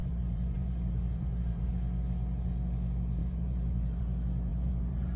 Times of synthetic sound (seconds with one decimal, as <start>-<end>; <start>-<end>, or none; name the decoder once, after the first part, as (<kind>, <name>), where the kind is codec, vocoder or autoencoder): 0.0-1.7 (vocoder, BigVGAN v2); 3.2-4.0; 4.5-5.2